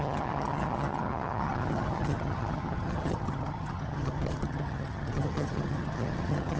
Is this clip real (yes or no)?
no